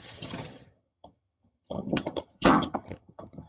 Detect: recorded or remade remade